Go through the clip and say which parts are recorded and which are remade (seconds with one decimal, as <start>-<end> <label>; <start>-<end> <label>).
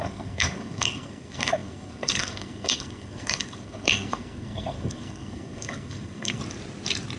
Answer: 0.0-6.4 remade; 6.4-7.2 recorded